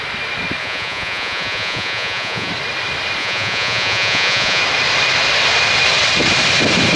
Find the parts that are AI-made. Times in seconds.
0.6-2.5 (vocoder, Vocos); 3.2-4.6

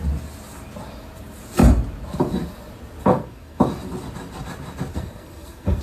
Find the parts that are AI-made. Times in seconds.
3.1-3.6 (codec, SNAC); 4.9-5.8

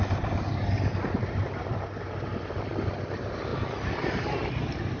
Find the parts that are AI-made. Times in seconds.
none

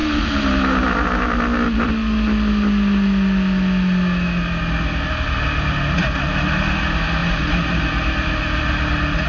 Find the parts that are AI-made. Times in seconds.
0.0-1.9 (vocoder, BigVGAN v2); 7.2-7.8

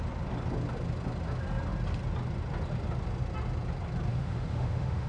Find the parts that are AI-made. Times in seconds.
4.1-5.1 (autoencoder, DAC-VAE)

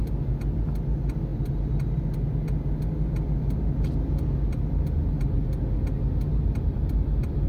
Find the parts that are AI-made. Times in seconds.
none